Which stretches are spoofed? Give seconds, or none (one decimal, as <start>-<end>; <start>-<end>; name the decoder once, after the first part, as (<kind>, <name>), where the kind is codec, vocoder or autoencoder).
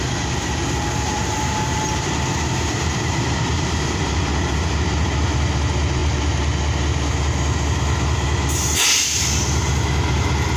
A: 1.1-4.2 (vocoder, BigVGAN v2)